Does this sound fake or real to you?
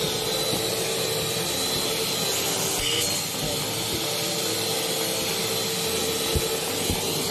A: real